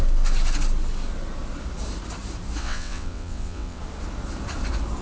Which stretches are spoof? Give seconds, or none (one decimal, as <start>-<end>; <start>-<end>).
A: 2.6-3.8